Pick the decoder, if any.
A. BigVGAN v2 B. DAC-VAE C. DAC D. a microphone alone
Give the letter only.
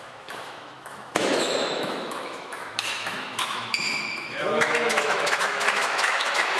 B